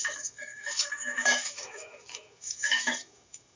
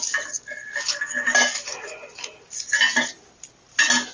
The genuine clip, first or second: second